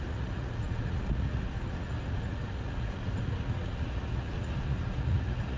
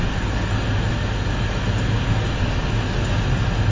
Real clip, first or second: second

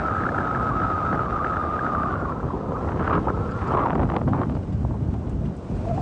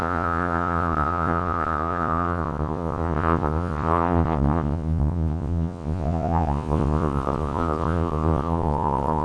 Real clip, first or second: first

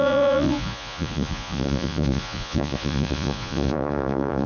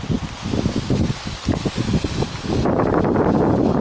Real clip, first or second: second